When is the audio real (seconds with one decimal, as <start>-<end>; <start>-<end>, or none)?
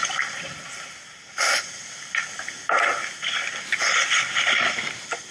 0.0-5.3